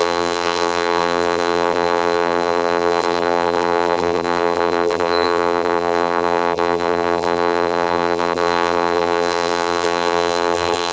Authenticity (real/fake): fake